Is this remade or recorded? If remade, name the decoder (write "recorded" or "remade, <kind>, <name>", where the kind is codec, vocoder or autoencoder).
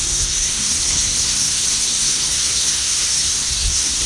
remade, codec, SNAC